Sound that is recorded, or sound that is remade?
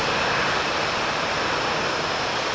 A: recorded